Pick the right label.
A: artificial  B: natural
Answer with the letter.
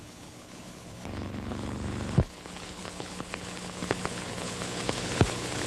A